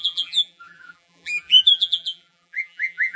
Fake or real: fake